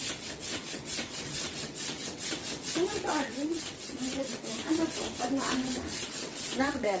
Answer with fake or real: fake